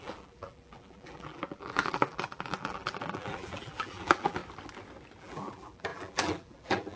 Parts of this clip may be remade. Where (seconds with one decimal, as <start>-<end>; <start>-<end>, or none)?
0.0-4.4; 5.2-7.0